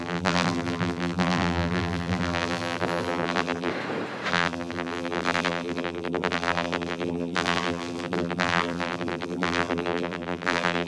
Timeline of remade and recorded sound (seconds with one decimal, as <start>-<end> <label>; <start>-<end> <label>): 0.0-3.7 remade; 3.7-4.3 recorded; 4.3-10.9 remade